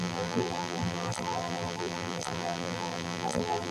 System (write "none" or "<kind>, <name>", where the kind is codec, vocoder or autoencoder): vocoder, BigVGAN v2